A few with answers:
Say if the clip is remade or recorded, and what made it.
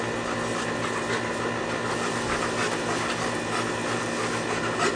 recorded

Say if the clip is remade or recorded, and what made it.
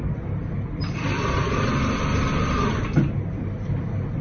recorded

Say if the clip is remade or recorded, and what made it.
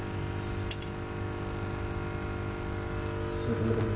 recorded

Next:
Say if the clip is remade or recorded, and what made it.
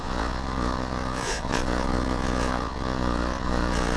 remade, vocoder, Vocos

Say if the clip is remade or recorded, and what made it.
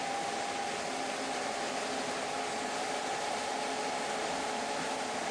recorded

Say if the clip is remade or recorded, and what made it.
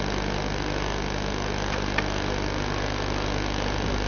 recorded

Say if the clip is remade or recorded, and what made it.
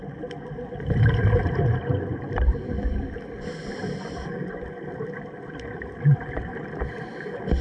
recorded